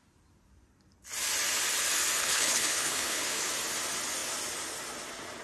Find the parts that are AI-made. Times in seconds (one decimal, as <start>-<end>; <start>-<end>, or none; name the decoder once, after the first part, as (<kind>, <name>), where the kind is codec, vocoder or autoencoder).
2.2-3.5 (codec, HILCodec)